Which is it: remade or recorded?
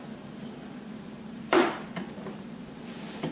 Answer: remade